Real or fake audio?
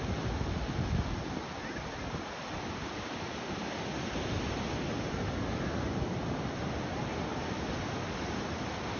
real